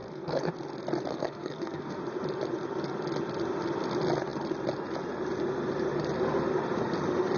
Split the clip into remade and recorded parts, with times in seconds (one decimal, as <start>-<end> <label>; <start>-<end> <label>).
0.0-0.5 remade; 0.5-1.1 recorded; 1.1-2.0 remade; 2.0-7.4 recorded